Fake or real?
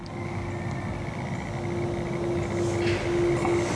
real